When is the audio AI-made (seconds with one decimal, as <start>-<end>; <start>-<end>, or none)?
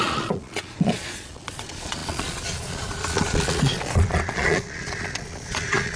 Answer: 0.0-6.0